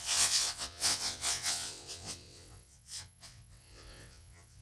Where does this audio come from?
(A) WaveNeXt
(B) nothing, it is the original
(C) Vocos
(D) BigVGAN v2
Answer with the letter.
A